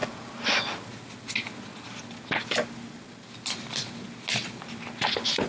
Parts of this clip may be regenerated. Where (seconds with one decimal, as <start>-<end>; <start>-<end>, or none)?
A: none